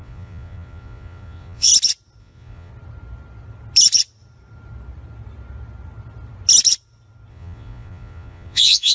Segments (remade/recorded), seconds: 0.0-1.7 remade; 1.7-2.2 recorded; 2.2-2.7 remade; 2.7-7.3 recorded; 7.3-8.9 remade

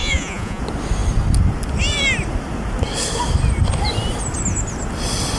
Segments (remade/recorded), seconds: 0.0-0.6 remade; 0.6-5.4 recorded

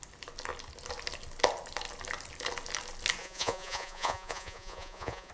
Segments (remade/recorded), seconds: 0.0-3.2 recorded; 3.2-5.3 remade

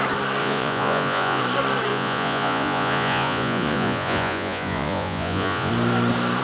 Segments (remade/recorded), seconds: 0.0-0.4 recorded; 0.4-1.4 remade; 1.4-1.9 recorded; 1.9-5.7 remade; 5.7-6.4 recorded

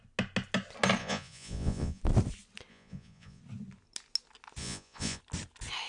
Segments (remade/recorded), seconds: 0.0-1.0 recorded; 1.0-2.0 remade; 2.0-2.7 recorded; 2.7-3.4 remade; 3.4-4.6 recorded; 4.6-5.2 remade; 5.2-5.9 recorded